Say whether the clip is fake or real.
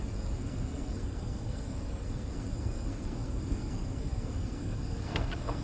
fake